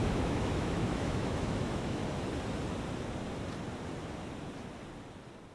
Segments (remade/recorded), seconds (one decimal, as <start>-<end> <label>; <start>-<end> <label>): 0.0-2.0 remade; 2.0-5.5 recorded